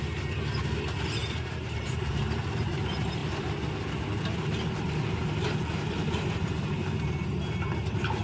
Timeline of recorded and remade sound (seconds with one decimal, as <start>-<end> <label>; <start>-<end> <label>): 0.0-1.2 recorded; 1.2-2.2 remade; 2.2-8.2 recorded